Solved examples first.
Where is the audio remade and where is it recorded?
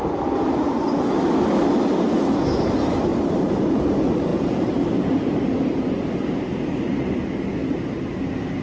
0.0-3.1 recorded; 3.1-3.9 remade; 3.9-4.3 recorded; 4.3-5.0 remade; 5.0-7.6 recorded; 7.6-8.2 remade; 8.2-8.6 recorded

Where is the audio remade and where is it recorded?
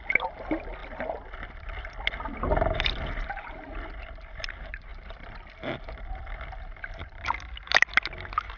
0.0-0.8 recorded; 0.8-2.9 remade; 2.9-4.9 recorded; 4.9-6.9 remade; 6.9-8.6 recorded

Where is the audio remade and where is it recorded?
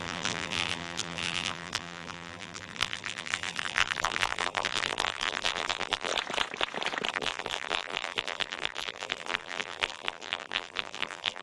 0.0-6.1 remade; 6.1-7.1 recorded; 7.1-11.4 remade